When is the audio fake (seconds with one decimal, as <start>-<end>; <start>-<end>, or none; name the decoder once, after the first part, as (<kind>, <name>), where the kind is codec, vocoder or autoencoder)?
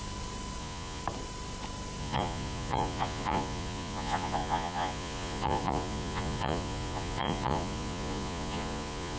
0.6-1.0 (vocoder, Vocos); 2.0-9.2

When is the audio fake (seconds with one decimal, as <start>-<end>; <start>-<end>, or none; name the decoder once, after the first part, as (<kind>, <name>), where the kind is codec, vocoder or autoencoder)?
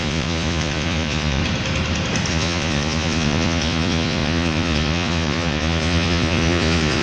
0.0-1.4 (vocoder, Vocos); 2.3-7.0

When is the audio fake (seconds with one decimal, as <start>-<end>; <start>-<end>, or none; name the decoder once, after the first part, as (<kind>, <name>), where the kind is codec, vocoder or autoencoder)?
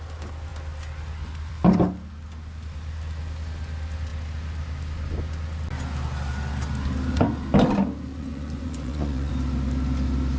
8.1-9.3 (vocoder, Vocos)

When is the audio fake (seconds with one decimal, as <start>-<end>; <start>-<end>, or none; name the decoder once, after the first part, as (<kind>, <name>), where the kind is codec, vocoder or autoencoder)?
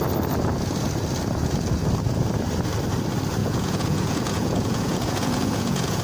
3.4-6.0 (vocoder, Vocos)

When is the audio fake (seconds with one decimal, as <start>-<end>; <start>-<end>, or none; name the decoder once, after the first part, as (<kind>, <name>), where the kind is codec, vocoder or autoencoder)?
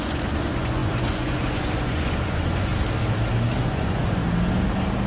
0.0-2.7 (vocoder, Vocos); 3.6-4.2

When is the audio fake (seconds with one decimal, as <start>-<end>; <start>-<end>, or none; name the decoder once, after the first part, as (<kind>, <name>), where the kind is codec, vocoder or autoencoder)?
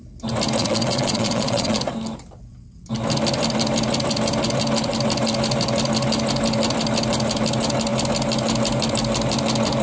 0.6-1.8 (vocoder, Vocos)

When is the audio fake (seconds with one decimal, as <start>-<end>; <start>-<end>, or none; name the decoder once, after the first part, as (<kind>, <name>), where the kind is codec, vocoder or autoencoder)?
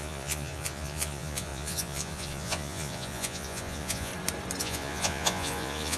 0.0-4.1 (vocoder, Vocos); 4.6-6.0